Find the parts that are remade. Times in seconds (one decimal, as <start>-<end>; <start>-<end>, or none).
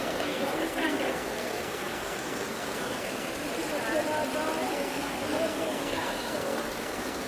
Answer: 0.0-3.3; 4.7-7.3